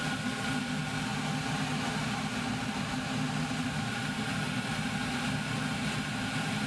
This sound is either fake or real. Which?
real